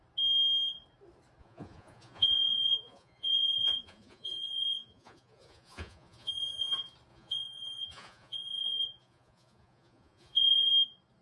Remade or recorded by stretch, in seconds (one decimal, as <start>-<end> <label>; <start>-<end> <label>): 0.0-1.4 recorded; 1.4-6.3 remade; 6.3-7.1 recorded; 7.1-10.7 remade; 10.7-11.2 recorded

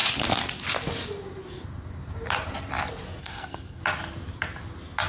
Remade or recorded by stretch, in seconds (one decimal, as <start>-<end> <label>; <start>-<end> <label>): 0.0-3.2 recorded; 3.2-3.8 remade; 3.8-5.1 recorded

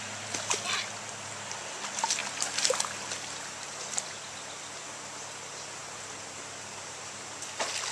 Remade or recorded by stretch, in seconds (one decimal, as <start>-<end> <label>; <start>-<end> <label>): 0.0-7.9 recorded

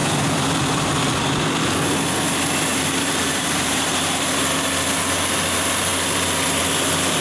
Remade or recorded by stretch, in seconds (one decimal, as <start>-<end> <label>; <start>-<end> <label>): 0.0-2.7 recorded; 2.7-4.4 remade; 4.4-7.2 recorded

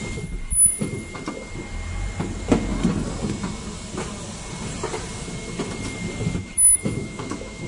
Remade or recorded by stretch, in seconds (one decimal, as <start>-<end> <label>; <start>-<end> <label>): 0.0-6.4 recorded; 6.4-7.7 remade